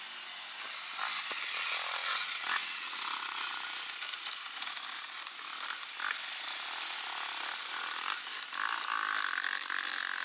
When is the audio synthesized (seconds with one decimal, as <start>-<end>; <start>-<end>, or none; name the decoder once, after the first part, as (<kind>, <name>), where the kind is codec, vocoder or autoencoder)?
2.0-3.5 (vocoder, WaveNeXt)